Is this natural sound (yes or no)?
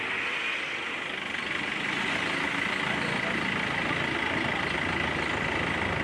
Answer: yes